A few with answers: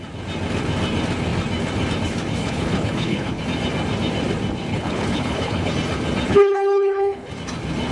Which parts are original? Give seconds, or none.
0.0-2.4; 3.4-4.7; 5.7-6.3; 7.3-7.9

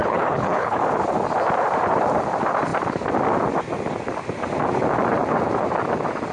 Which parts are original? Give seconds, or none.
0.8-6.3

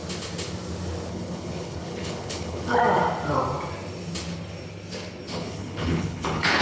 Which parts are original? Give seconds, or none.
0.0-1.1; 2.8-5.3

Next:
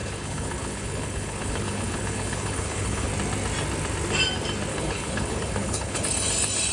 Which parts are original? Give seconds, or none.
3.1-4.7; 6.0-6.7

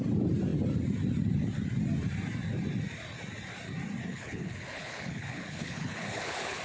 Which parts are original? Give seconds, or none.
0.0-4.1

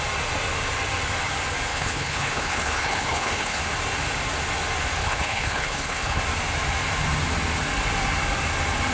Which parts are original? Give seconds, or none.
0.0-1.7; 3.6-5.0; 6.2-8.9